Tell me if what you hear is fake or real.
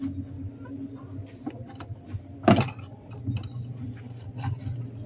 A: real